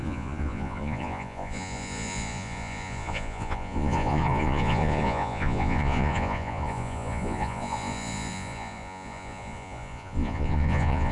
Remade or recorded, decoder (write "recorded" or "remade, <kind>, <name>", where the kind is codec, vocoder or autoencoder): remade, vocoder, Vocos